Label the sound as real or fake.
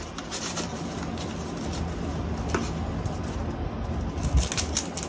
real